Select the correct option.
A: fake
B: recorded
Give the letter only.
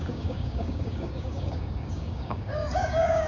A